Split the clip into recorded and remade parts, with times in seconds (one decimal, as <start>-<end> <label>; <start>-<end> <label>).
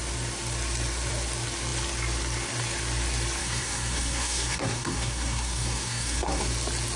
0.0-3.4 recorded; 3.4-6.4 remade; 6.4-7.0 recorded